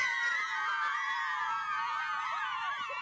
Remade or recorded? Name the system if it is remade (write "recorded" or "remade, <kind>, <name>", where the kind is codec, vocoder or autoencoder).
remade, vocoder, Vocos